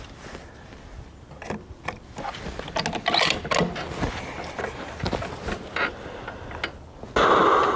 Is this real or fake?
real